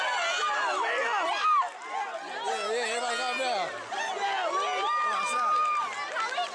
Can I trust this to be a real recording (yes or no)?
yes